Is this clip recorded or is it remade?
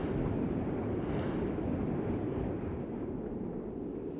recorded